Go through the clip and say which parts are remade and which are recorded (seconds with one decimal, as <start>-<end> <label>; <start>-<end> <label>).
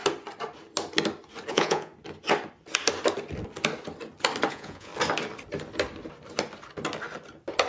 0.0-1.5 recorded; 1.5-1.9 remade; 1.9-4.5 recorded; 4.5-4.9 remade; 4.9-7.7 recorded